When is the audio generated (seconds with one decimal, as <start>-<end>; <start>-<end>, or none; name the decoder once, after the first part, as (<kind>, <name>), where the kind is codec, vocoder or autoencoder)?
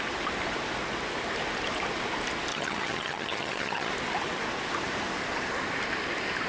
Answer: 2.5-3.9 (vocoder, HiFi-GAN)